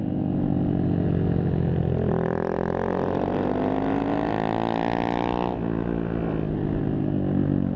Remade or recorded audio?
recorded